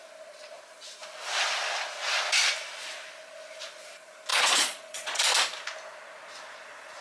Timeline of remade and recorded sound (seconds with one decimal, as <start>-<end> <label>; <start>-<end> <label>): 0.0-4.3 recorded; 4.3-5.2 remade; 5.2-7.0 recorded